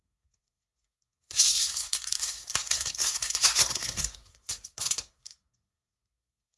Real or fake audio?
fake